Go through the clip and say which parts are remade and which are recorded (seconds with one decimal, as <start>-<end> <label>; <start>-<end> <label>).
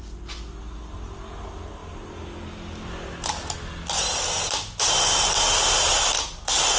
0.0-6.8 recorded